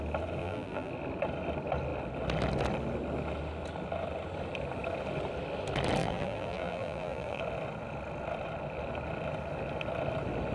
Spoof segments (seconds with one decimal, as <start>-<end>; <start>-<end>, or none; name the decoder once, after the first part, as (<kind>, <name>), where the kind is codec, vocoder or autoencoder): 0.4-0.9 (vocoder, BigVGAN v2); 6.0-7.4